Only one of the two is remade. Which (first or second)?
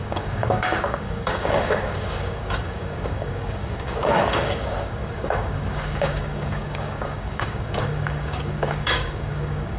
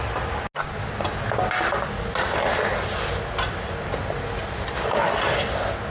first